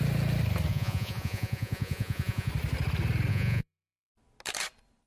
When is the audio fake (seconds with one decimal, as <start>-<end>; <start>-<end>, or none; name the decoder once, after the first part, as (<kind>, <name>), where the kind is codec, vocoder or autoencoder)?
0.7-2.5 (vocoder, Vocos); 3.3-4.1